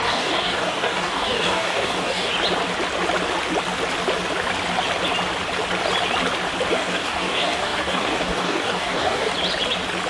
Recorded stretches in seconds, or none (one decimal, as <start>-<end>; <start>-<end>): 2.3-6.7; 9.3-10.1